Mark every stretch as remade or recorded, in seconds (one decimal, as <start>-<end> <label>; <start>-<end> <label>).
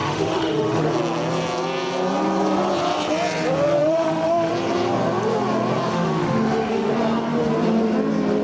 0.0-0.9 remade; 0.9-3.8 recorded; 3.8-4.5 remade; 4.5-5.9 recorded; 5.9-6.9 remade; 6.9-8.4 recorded